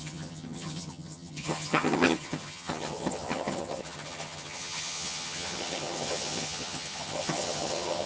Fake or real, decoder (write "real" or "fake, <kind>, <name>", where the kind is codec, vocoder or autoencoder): fake, vocoder, HiFi-GAN